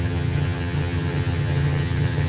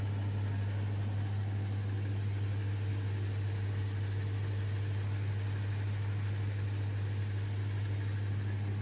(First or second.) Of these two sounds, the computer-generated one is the first